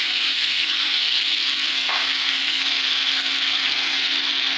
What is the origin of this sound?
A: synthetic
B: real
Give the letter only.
A